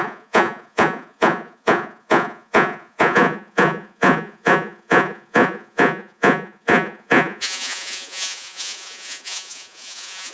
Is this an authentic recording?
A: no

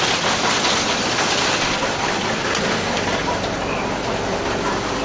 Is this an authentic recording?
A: yes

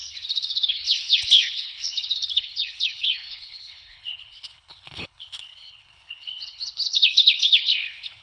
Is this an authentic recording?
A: no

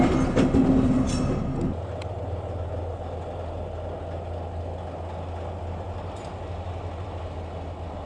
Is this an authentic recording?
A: yes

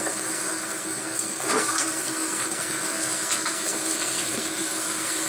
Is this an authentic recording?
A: no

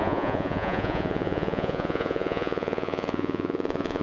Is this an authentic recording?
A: no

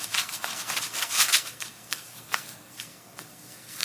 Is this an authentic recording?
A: no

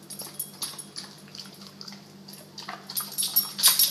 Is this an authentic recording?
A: yes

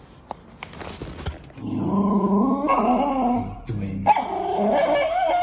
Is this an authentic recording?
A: yes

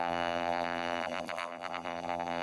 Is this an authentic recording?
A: no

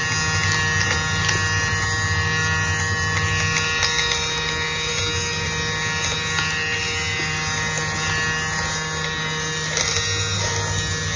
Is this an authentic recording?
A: yes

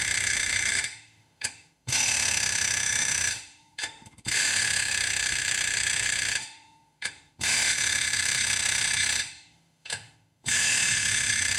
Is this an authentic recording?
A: no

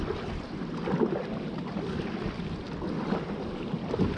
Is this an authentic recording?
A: yes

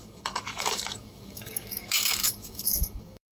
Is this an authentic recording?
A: no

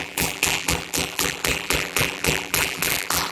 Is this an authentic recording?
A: no